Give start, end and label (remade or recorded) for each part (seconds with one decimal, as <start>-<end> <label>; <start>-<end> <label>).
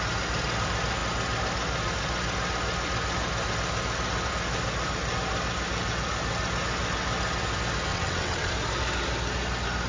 0.0-7.9 recorded; 7.9-8.5 remade; 8.5-9.9 recorded